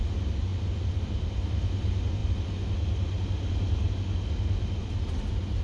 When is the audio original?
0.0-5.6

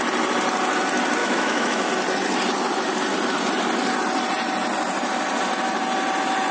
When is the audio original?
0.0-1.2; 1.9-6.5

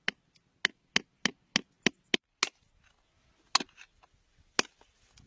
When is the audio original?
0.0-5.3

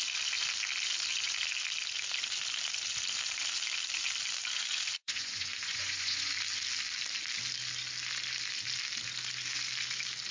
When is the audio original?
0.0-5.0; 6.3-10.3